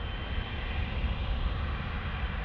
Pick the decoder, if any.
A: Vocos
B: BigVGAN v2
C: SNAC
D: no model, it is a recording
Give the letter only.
B